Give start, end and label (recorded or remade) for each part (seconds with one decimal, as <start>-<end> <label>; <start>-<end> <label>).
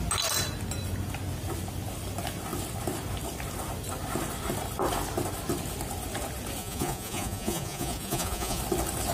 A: 0.0-6.6 recorded; 6.6-8.6 remade; 8.6-9.1 recorded